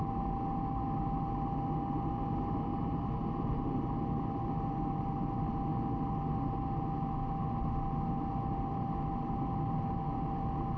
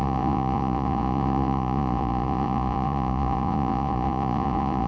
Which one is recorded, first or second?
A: first